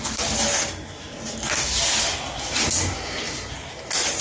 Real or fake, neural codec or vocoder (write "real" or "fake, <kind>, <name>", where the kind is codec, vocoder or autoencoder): real